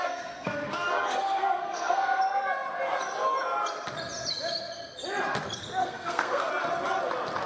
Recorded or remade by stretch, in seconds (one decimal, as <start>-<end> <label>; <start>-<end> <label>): 0.0-2.2 remade; 2.2-5.8 recorded; 5.8-6.5 remade; 6.5-7.5 recorded